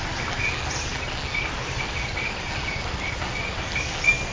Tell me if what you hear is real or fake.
real